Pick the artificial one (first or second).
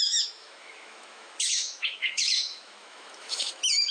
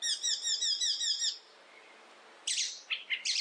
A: first